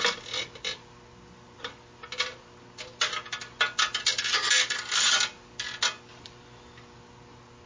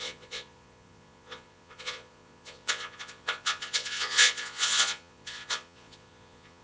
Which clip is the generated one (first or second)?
second